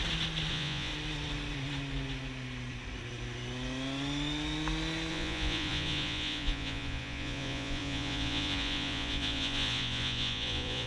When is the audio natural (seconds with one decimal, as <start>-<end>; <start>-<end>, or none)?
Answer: 0.0-0.5; 0.9-5.1

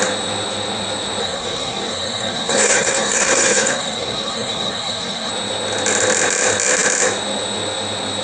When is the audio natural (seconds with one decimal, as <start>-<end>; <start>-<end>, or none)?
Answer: 0.0-1.2; 5.3-8.2

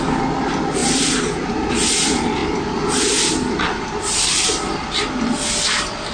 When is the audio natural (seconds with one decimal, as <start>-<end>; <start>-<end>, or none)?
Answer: 0.0-6.1

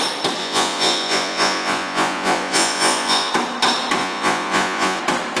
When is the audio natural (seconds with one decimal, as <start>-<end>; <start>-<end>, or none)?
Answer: 0.0-0.4; 3.3-4.0; 5.0-5.4

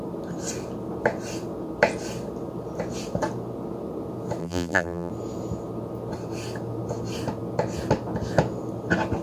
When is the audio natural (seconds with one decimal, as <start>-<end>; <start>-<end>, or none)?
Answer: 0.0-4.4; 5.1-9.2

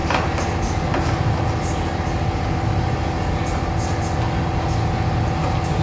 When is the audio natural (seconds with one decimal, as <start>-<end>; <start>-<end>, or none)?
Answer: 0.0-5.8

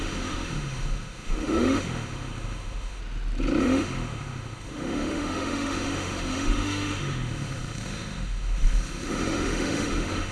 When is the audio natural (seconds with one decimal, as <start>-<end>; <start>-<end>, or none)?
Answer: 3.0-3.6